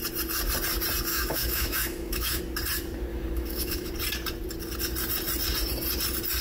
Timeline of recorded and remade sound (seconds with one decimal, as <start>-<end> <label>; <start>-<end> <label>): 0.0-1.1 recorded; 1.1-2.4 remade; 2.4-3.1 recorded; 3.1-3.9 remade; 3.9-6.4 recorded